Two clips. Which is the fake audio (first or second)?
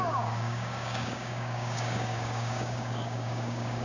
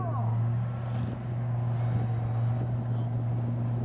first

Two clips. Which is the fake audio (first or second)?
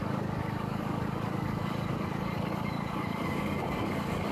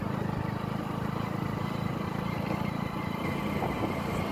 first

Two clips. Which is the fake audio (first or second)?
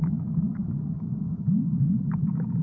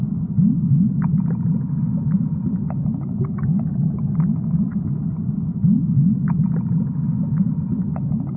first